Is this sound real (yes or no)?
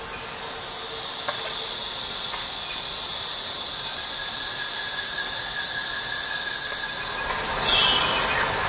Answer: yes